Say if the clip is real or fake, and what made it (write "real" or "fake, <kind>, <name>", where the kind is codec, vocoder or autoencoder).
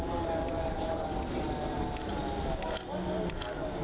real